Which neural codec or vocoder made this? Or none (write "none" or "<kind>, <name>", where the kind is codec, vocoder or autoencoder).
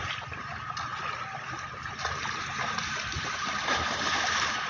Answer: vocoder, BigVGAN v2